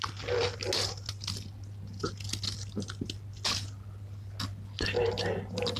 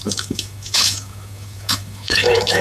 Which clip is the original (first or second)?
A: first